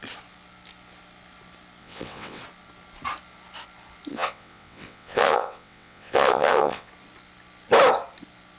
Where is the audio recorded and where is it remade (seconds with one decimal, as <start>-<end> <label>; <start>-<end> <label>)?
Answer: 0.0-1.8 recorded; 1.8-2.4 remade; 2.4-4.1 recorded; 4.1-6.9 remade; 6.9-8.6 recorded